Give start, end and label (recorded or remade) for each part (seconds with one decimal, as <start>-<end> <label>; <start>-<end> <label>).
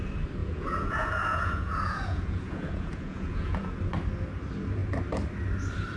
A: 0.0-0.4 recorded; 0.4-3.7 remade; 3.7-6.0 recorded